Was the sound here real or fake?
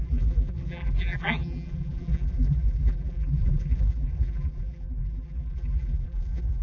fake